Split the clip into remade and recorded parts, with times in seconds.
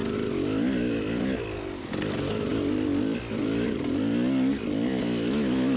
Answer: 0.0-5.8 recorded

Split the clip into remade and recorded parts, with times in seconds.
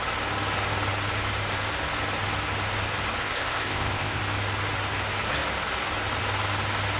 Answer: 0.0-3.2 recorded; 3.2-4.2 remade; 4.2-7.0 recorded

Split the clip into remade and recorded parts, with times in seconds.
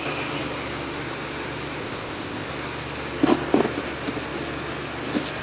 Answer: 0.0-1.8 recorded; 1.8-2.5 remade; 2.5-5.4 recorded